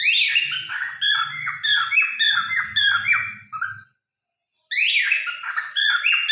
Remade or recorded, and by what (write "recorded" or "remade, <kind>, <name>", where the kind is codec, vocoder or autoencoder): recorded